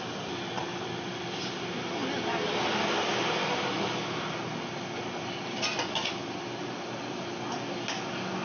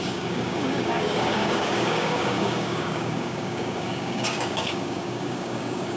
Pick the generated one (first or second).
second